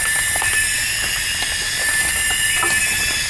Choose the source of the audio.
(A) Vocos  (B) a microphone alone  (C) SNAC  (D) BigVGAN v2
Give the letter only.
B